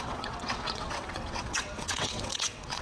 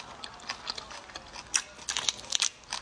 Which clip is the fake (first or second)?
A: first